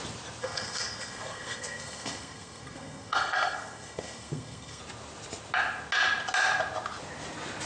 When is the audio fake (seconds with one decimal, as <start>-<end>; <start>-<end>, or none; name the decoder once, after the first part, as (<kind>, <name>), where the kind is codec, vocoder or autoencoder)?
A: 0.4-4.8 (codec, SNAC)